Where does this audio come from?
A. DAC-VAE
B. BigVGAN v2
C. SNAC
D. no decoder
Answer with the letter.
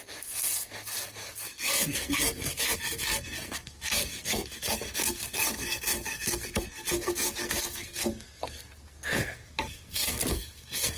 C